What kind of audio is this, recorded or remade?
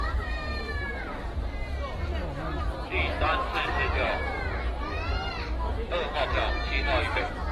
recorded